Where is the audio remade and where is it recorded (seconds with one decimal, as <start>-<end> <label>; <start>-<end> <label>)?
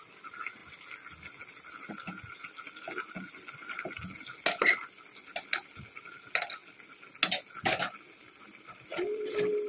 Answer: 0.0-9.7 recorded